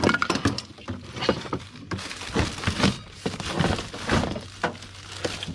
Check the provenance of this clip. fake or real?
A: real